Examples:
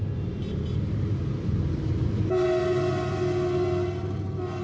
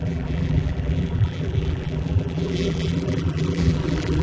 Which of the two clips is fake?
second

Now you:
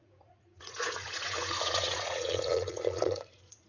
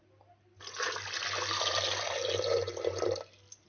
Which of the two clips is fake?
first